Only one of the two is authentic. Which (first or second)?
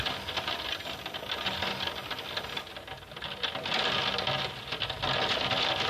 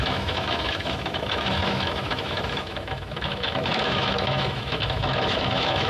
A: first